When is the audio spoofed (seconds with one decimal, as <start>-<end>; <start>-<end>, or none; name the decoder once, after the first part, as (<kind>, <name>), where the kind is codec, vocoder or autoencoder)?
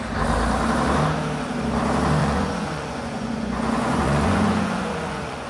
2.2-5.5 (vocoder, Vocos)